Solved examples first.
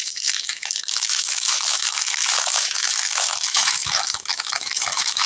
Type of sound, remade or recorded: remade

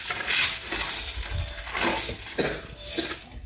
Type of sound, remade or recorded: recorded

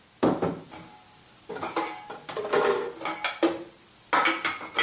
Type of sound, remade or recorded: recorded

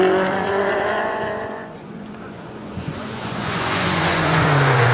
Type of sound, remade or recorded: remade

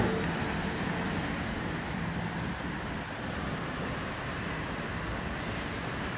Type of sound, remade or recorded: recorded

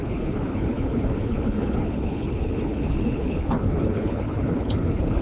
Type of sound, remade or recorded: remade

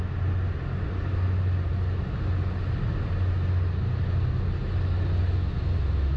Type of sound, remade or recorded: recorded